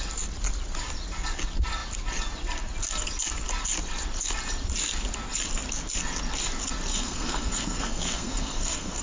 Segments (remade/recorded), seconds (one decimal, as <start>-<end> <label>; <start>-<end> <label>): 0.0-6.9 recorded; 6.9-9.0 remade